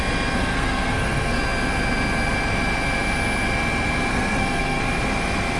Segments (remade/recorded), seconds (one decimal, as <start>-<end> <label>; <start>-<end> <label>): 0.0-0.5 recorded; 0.5-1.4 remade; 1.4-4.1 recorded; 4.1-4.8 remade; 4.8-5.6 recorded